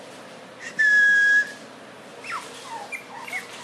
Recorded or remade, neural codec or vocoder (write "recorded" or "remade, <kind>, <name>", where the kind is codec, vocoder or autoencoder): recorded